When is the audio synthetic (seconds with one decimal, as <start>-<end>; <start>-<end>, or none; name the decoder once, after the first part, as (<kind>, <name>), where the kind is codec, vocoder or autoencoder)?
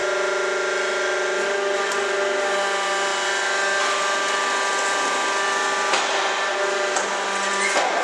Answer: none